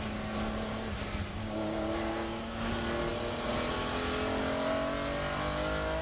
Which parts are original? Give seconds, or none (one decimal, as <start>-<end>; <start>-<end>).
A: 0.0-1.4; 2.7-6.0